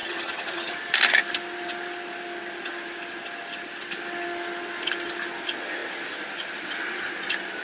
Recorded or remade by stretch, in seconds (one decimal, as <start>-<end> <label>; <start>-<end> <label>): 0.0-0.7 remade; 0.7-7.6 recorded